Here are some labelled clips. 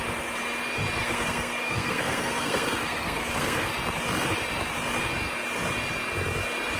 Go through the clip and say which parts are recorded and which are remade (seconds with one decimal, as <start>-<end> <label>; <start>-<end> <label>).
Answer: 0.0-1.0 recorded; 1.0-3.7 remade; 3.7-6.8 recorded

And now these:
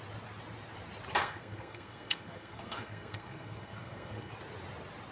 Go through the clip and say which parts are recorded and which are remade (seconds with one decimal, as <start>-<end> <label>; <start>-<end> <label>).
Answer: 0.0-1.2 recorded; 1.2-4.3 remade; 4.3-5.1 recorded

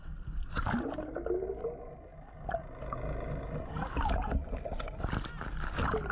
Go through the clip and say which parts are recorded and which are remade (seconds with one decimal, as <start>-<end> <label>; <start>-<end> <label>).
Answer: 0.0-6.1 recorded